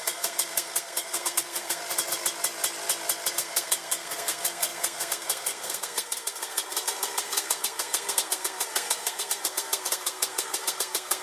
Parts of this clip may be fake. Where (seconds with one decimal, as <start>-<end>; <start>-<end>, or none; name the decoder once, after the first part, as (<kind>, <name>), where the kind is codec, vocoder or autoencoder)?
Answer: 0.0-1.8 (codec, SNAC); 3.3-11.2

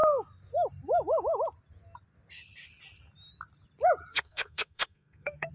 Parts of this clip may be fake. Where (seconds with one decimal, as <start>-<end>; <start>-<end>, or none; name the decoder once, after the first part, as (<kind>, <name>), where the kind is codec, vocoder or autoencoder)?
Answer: 4.1-5.5 (codec, SNAC)

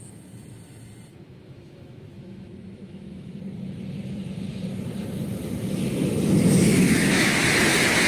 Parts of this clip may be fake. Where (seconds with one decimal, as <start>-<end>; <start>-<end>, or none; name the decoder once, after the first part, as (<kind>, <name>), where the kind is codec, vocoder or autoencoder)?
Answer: 1.1-3.4 (autoencoder, DAC-VAE); 6.7-7.3